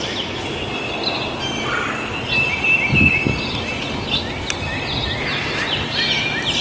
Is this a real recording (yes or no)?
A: yes